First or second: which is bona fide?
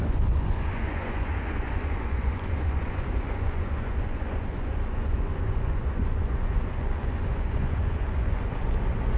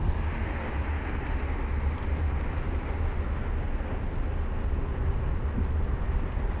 second